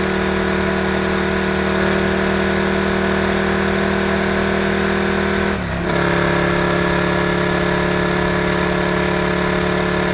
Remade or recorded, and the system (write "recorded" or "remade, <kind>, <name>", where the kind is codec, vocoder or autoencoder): recorded